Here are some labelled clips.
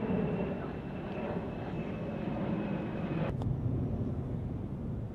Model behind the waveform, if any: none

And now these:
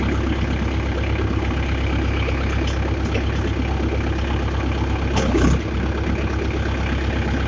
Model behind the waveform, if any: none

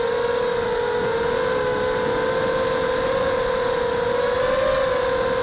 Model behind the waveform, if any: none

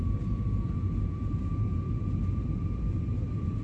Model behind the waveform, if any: none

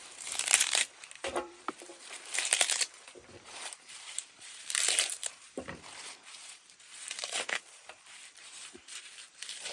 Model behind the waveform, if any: vocoder, BigVGAN v2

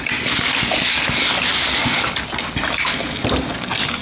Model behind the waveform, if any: none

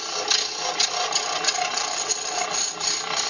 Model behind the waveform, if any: none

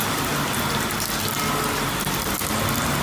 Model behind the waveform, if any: none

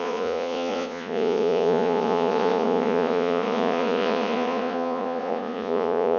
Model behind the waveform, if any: vocoder, Vocos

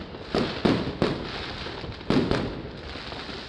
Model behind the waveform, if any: none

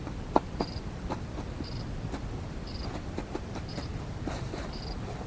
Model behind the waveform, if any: vocoder, BigVGAN v2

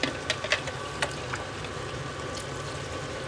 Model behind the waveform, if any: none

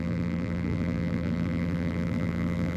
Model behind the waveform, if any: vocoder, BigVGAN v2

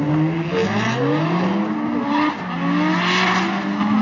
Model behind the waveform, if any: none